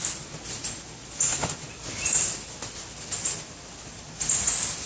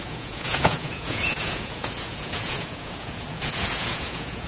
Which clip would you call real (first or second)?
first